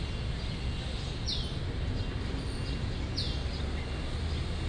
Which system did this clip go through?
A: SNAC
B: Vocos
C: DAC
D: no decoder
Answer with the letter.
D